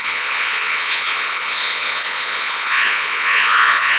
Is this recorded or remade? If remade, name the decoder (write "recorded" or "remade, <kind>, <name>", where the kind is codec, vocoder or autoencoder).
remade, vocoder, Vocos